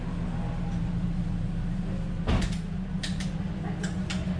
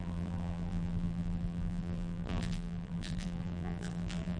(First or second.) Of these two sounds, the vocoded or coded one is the second